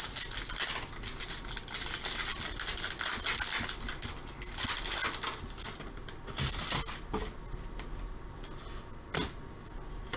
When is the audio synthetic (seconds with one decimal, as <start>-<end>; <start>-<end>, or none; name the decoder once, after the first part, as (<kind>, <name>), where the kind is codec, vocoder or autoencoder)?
none